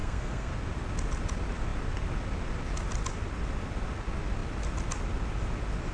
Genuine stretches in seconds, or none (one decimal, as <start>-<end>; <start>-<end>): 0.5-5.9